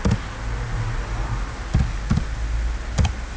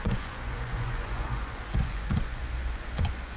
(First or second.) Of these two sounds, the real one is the first